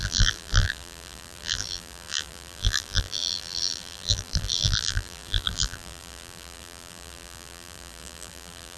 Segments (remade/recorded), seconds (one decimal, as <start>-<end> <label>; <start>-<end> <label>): 0.0-8.8 remade